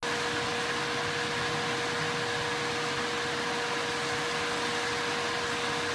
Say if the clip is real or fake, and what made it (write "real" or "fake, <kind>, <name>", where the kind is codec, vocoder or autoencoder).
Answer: real